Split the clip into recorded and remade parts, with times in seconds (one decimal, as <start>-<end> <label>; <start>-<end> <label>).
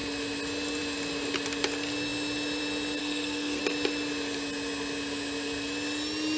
0.0-3.0 recorded; 3.0-3.6 remade; 3.6-6.4 recorded